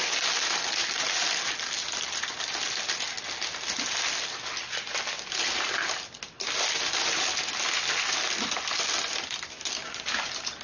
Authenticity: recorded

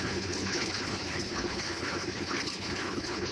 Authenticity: remade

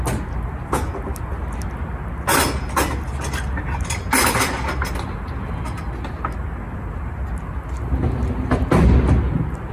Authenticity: recorded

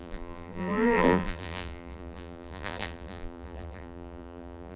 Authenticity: remade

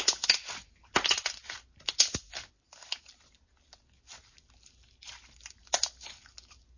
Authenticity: recorded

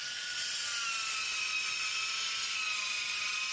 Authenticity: recorded